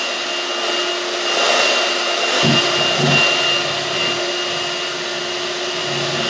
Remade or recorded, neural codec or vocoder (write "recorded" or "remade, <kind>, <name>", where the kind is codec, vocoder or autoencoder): recorded